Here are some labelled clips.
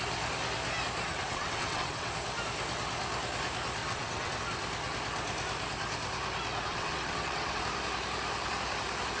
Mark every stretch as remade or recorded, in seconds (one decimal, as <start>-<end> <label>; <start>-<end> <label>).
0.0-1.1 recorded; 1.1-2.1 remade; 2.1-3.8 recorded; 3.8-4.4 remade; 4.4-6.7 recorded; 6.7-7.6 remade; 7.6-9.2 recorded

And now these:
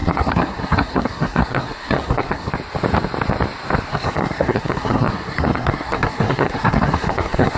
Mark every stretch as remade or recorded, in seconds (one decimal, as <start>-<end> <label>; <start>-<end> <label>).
0.0-2.5 remade; 2.5-3.9 recorded; 3.9-7.6 remade

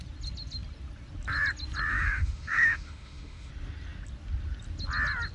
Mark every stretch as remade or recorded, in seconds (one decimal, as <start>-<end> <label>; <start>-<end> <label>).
0.0-1.9 recorded; 1.9-3.5 remade; 3.5-5.3 recorded

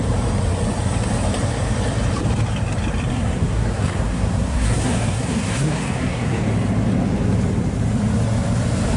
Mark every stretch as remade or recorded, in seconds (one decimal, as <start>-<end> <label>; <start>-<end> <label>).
0.0-3.1 recorded; 3.1-6.4 remade; 6.4-9.0 recorded

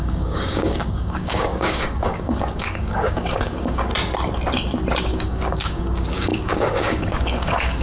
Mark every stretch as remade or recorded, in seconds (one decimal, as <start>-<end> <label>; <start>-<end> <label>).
0.0-3.9 remade; 3.9-5.0 recorded; 5.0-7.8 remade

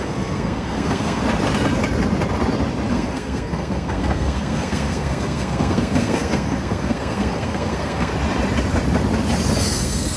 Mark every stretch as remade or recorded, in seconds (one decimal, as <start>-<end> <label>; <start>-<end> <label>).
0.0-1.2 remade; 1.2-2.9 recorded; 2.9-8.1 remade; 8.1-9.6 recorded; 9.6-10.2 remade

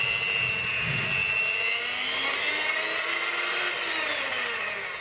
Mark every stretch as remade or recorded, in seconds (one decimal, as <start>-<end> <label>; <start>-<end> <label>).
0.0-5.0 recorded